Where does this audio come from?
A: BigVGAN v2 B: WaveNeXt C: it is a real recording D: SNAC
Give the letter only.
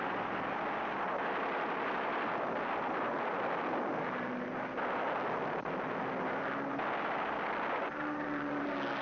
C